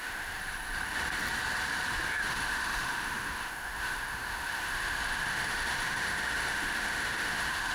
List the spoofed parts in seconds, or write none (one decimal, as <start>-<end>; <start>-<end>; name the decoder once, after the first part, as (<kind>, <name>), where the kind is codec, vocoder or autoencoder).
0.0-0.4 (autoencoder, DAC-VAE); 2.3-7.7